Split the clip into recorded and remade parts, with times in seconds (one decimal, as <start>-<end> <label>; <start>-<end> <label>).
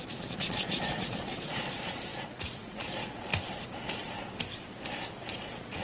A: 0.0-3.3 remade; 3.3-5.1 recorded; 5.1-5.8 remade